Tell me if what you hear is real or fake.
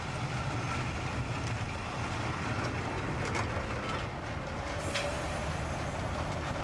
real